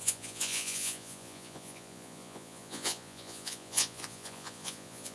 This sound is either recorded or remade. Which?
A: remade